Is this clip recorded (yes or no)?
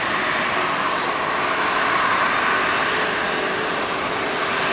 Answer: yes